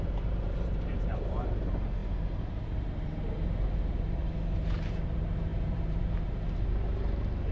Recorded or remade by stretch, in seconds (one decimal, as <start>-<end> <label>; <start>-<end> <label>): 0.0-7.5 remade